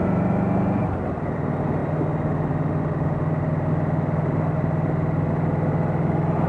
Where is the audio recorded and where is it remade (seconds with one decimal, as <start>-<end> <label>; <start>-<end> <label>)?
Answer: 0.0-6.5 recorded